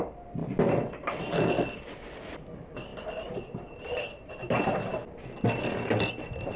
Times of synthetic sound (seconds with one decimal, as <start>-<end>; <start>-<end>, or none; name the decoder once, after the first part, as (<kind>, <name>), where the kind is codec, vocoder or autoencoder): none